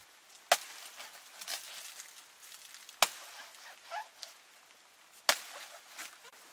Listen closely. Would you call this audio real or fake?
real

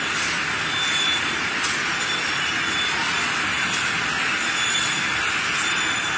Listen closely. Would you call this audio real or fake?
real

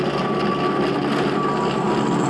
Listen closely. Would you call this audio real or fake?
real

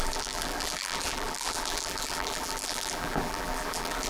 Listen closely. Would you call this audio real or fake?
fake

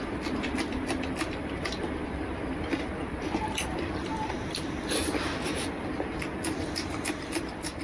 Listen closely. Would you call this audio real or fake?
fake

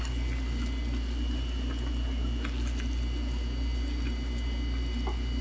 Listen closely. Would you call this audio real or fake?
real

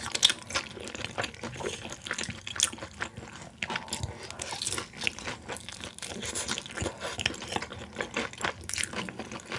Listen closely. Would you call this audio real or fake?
real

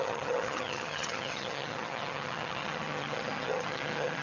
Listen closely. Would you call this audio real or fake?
fake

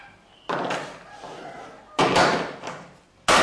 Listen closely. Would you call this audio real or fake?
real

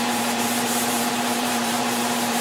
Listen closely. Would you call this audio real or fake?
fake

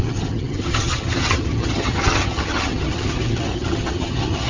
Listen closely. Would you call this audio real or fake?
fake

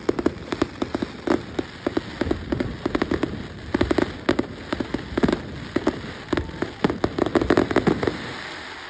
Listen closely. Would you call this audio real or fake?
real